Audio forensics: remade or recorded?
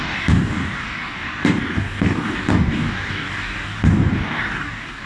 remade